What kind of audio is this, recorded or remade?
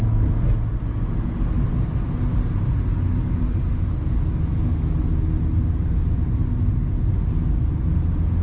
recorded